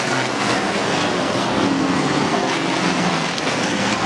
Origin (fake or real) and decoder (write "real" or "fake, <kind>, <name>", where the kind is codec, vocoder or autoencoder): fake, codec, SNAC